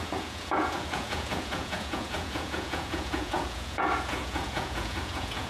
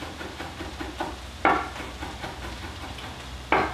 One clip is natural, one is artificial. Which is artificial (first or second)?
first